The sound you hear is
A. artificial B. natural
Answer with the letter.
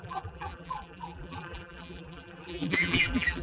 A